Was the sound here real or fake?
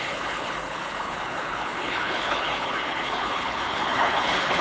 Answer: fake